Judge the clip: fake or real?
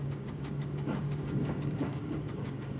fake